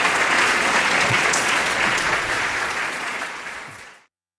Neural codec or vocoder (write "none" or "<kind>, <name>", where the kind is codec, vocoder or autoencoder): vocoder, Vocos